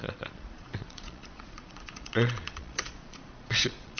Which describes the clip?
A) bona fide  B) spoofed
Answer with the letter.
B